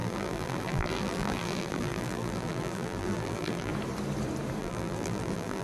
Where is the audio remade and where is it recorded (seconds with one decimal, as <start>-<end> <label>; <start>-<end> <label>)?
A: 0.0-3.7 remade; 3.7-4.6 recorded; 4.6-5.6 remade

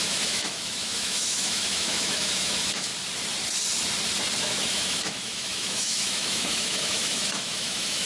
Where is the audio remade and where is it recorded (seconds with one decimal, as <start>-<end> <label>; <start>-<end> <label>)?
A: 0.0-2.9 remade; 2.9-4.4 recorded; 4.4-8.1 remade

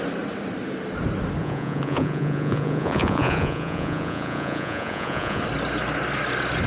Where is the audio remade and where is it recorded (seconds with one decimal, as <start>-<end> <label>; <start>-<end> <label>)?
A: 0.0-1.4 recorded; 1.4-5.4 remade; 5.4-6.7 recorded

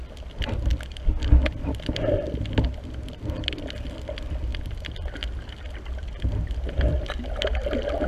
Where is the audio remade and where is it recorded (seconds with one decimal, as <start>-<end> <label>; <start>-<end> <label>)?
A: 0.0-4.5 recorded; 4.5-5.1 remade; 5.1-8.1 recorded

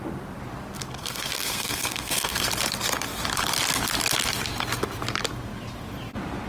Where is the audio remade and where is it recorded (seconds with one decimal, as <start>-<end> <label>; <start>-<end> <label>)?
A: 0.0-1.0 recorded; 1.0-2.5 remade; 2.5-6.5 recorded

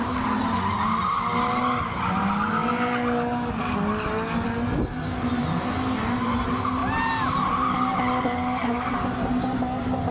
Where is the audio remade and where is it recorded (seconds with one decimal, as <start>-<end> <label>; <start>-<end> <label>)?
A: 0.0-6.8 recorded; 6.8-7.7 remade; 7.7-10.1 recorded

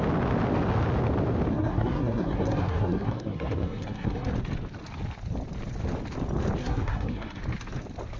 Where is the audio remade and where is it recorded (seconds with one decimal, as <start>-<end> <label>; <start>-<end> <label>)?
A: 0.0-1.5 recorded; 1.5-4.3 remade; 4.3-6.6 recorded; 6.6-7.4 remade; 7.4-8.2 recorded